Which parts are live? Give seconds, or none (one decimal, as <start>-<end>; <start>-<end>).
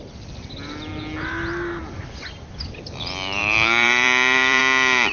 0.0-3.4; 4.6-5.1